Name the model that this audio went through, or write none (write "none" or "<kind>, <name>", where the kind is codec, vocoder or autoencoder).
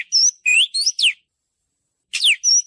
none